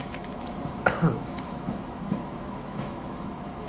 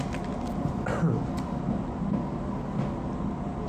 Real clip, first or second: second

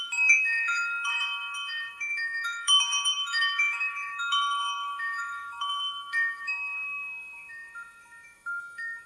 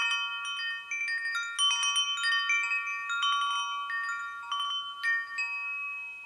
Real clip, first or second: second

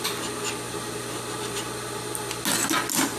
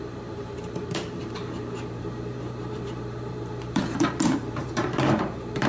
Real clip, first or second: first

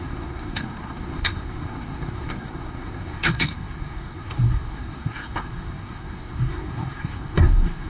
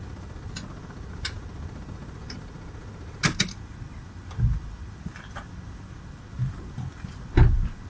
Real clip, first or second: second